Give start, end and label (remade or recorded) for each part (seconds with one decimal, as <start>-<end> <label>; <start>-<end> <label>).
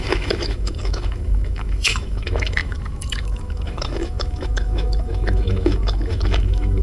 0.0-6.8 remade